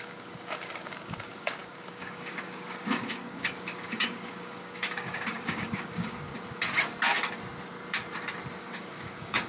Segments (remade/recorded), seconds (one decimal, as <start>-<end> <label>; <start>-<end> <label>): 0.0-6.3 remade; 6.3-8.6 recorded; 8.6-9.5 remade